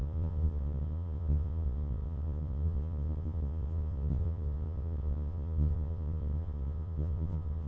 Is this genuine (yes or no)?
no